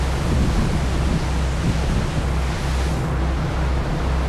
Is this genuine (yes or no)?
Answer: yes